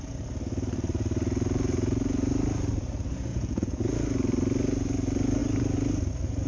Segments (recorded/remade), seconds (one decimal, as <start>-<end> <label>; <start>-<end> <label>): 0.0-3.3 recorded; 3.3-3.8 remade; 3.8-6.5 recorded